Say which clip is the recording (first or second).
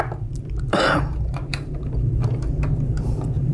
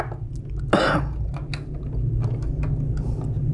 second